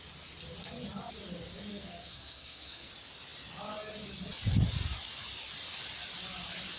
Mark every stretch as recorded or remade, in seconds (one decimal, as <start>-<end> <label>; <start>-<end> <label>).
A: 0.0-1.7 recorded; 1.7-2.9 remade; 2.9-6.8 recorded